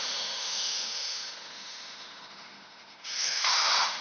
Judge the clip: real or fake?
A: fake